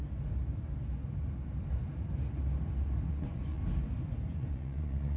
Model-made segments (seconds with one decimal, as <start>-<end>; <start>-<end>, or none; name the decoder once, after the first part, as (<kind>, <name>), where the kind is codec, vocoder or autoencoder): 3.1-3.6 (vocoder, Vocos); 4.3-5.2